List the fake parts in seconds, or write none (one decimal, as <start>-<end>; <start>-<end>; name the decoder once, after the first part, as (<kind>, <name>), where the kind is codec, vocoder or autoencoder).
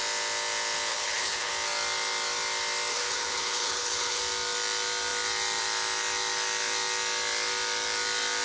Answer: 0.9-1.5 (codec, HILCodec); 2.9-4.2